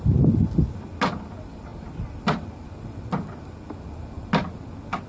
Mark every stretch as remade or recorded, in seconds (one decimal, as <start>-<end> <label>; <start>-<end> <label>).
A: 0.0-5.1 recorded